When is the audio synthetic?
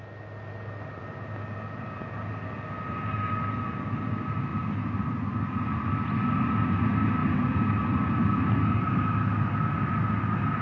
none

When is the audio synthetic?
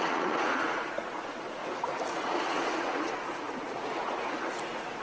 0.0-1.6 (vocoder, Vocos); 2.1-5.0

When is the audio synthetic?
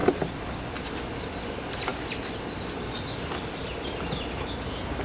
none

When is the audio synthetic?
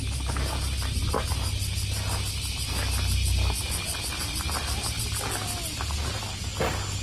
none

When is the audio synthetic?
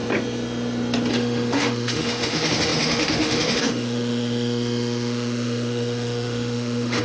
1.1-7.0 (autoencoder, DAC-VAE)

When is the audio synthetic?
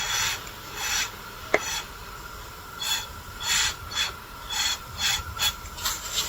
1.4-1.9 (vocoder, BigVGAN v2); 3.1-5.2